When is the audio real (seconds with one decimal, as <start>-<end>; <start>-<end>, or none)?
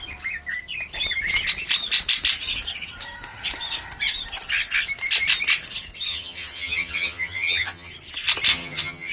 0.0-6.1; 7.9-8.5